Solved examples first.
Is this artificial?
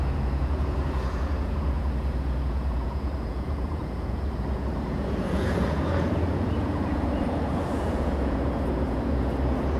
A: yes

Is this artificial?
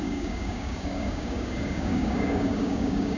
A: yes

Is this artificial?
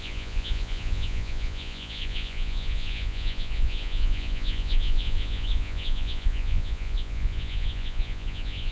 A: yes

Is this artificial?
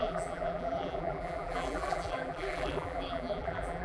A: yes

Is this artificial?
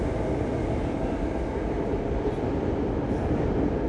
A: no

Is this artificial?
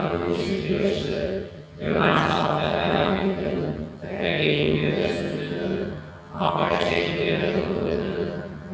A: yes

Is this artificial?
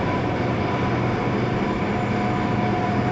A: no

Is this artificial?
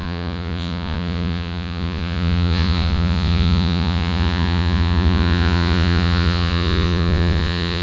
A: yes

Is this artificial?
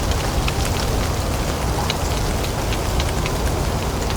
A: no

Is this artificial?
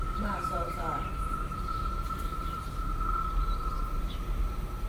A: yes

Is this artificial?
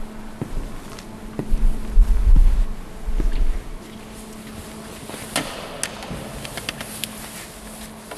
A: no